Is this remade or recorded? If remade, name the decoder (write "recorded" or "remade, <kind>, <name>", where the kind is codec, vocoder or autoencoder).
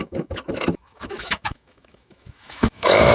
remade, autoencoder, DAC-VAE